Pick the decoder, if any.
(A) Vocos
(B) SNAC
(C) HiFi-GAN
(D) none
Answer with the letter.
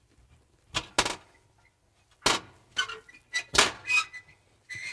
D